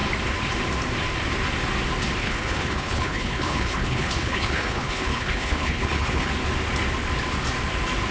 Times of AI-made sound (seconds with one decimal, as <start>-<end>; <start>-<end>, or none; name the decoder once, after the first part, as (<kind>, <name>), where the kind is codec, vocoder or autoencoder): 2.2-6.3 (codec, HILCodec)